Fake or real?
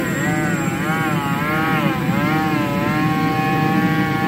real